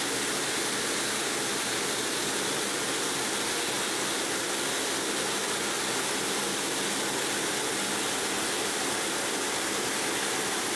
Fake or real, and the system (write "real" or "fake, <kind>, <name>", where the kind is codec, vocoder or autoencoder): real